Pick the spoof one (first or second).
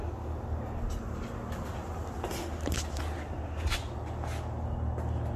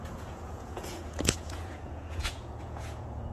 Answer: second